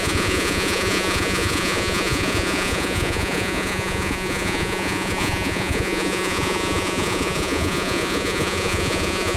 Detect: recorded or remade remade